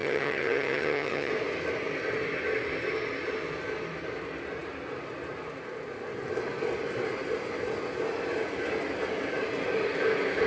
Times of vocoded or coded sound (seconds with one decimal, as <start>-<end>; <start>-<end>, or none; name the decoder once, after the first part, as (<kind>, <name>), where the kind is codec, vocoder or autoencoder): 0.0-1.3 (vocoder, HiFi-GAN)